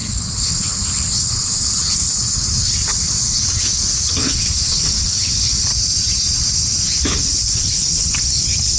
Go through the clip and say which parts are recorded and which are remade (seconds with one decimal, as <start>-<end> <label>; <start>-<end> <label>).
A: 0.0-5.7 remade; 5.7-7.0 recorded; 7.0-8.8 remade